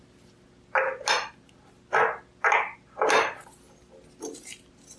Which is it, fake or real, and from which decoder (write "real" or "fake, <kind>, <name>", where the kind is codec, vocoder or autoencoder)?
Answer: real